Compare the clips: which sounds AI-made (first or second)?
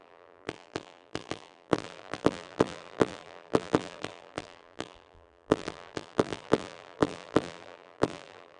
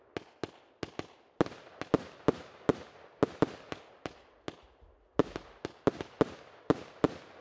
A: first